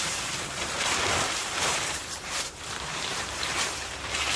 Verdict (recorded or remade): remade